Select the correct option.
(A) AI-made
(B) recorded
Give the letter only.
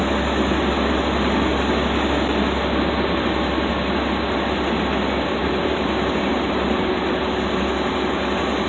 B